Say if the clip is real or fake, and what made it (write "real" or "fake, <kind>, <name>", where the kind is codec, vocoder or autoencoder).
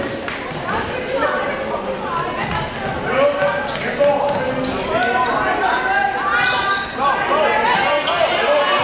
real